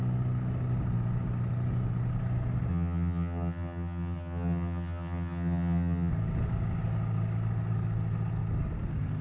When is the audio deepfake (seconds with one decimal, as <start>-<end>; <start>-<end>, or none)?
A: 2.7-6.1